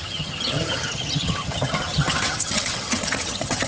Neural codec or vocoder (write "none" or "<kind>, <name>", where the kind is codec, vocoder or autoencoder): vocoder, HiFi-GAN